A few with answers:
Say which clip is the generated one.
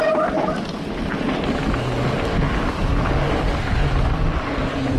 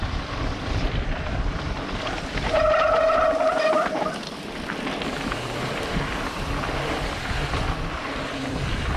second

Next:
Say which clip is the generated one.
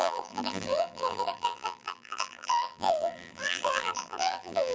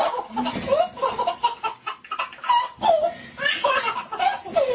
first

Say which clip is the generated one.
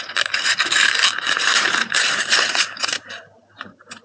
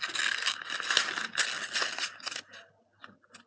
first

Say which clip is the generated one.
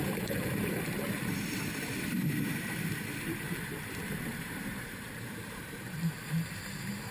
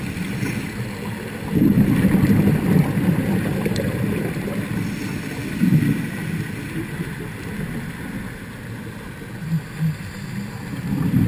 first